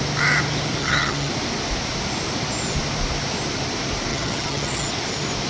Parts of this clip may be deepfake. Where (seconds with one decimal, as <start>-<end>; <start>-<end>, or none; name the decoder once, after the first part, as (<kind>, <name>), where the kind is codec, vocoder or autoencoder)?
0.8-1.3 (vocoder, HiFi-GAN); 4.1-4.9